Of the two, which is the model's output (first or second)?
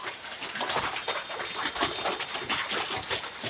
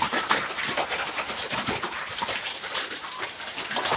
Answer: second